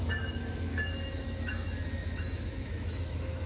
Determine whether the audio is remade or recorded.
remade